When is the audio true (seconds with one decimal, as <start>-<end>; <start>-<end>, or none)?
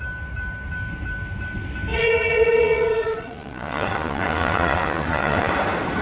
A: 0.0-1.9; 5.5-6.0